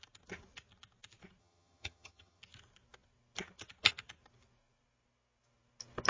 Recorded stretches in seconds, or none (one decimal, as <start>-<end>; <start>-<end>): 0.0-1.4; 2.4-6.1